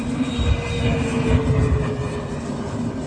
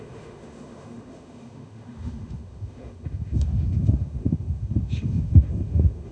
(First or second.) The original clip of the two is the first